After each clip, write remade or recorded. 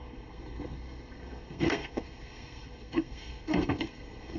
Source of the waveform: remade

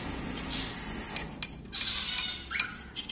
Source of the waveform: recorded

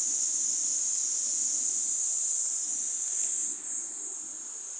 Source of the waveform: recorded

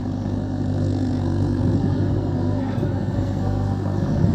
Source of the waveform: remade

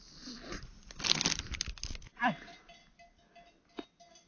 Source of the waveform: recorded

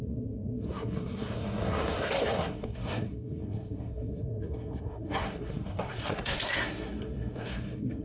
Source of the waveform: remade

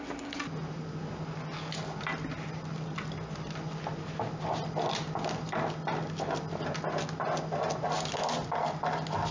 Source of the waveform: recorded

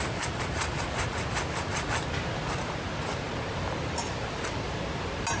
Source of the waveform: recorded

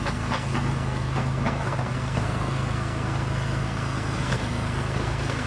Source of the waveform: remade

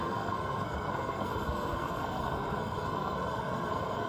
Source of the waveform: remade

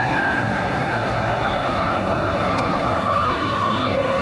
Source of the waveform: remade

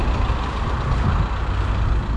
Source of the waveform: recorded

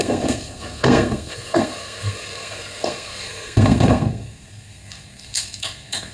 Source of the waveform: remade